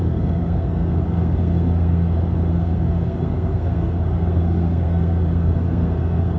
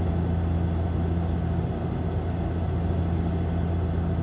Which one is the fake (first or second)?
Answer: first